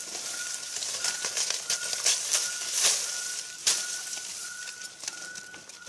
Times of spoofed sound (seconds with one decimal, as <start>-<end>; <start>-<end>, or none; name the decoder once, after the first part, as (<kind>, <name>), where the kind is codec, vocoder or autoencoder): none